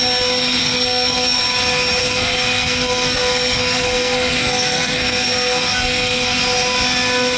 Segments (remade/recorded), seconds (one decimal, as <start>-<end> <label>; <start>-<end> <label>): 0.0-0.6 recorded; 0.6-1.4 remade; 1.4-2.0 recorded; 2.0-6.4 remade; 6.4-7.4 recorded